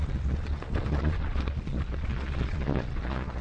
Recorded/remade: remade